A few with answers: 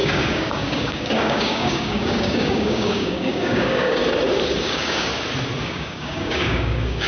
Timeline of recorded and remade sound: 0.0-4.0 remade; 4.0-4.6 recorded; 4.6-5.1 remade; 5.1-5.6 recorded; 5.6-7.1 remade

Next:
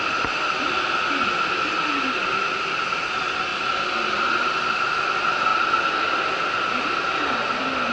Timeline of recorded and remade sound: 0.0-7.9 recorded

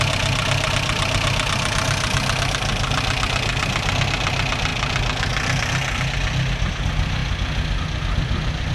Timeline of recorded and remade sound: 0.0-8.7 recorded